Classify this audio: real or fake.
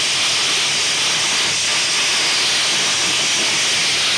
real